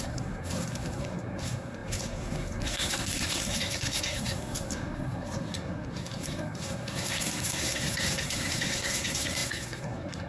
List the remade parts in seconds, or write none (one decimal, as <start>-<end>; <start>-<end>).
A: 0.0-10.3